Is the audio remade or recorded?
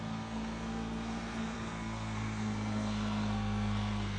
remade